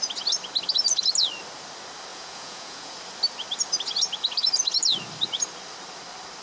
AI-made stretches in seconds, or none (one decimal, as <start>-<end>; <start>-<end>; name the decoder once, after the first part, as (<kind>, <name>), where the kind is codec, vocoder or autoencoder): 2.1-3.0 (vocoder, Vocos)